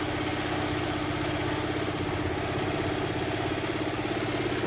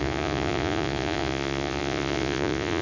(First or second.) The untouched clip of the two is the first